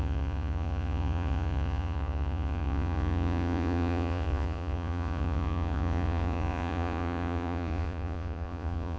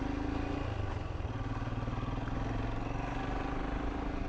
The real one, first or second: second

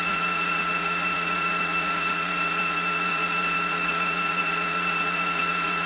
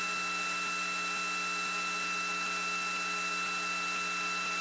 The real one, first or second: second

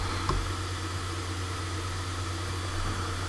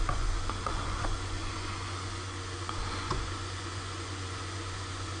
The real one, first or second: first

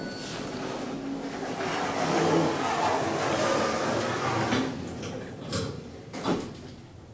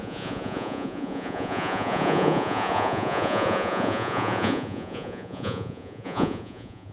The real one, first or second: first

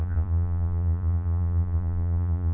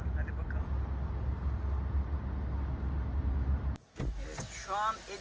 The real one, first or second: second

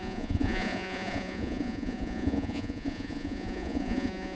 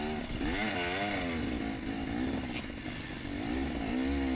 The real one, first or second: second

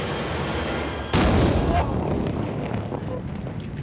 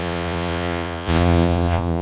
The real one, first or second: first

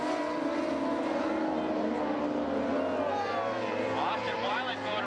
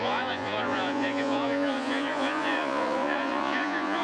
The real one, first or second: first